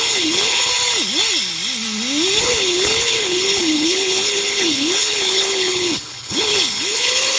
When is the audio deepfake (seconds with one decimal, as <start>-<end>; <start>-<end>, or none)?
0.0-0.7; 2.4-7.4

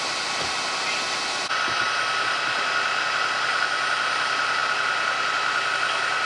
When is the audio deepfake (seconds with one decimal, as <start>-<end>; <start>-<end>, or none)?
none

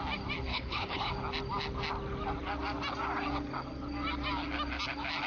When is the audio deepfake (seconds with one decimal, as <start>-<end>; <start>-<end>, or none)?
0.5-1.1

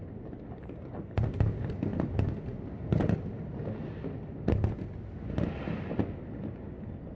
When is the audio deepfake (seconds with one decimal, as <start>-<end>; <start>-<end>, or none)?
none

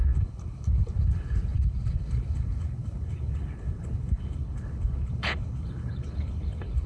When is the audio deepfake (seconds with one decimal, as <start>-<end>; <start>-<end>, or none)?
0.0-6.9